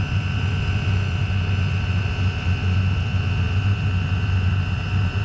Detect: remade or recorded recorded